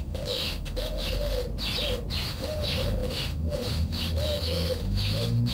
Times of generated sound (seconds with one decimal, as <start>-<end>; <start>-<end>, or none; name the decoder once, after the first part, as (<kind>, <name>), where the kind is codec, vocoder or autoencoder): 0.0-1.4 (autoencoder, DAC-VAE); 2.3-5.5